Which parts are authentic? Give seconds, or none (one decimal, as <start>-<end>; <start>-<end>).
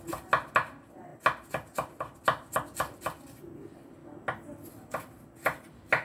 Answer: 0.0-6.0